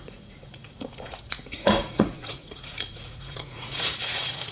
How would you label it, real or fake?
fake